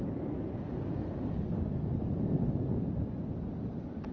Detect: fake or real real